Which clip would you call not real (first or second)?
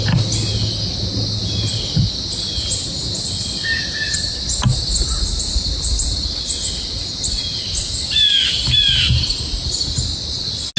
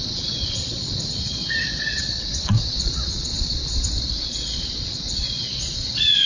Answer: second